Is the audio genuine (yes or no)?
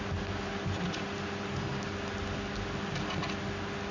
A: yes